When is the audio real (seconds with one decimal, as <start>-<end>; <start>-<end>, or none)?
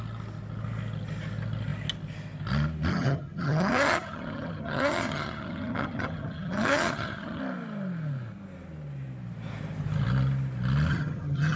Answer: 0.0-2.9; 7.4-10.9